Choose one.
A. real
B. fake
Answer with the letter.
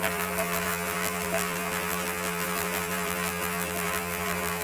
B